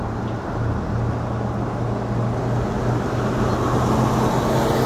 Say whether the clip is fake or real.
real